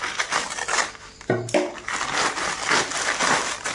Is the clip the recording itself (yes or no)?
yes